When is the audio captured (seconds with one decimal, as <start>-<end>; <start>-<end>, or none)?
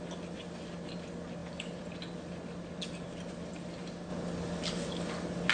0.0-5.5